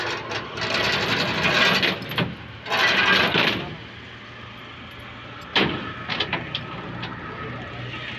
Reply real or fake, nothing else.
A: real